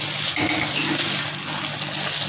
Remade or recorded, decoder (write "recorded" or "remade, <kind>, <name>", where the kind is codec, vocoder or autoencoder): recorded